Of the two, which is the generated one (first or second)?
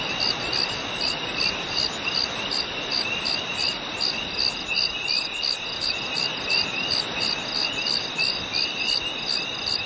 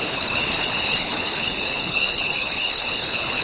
second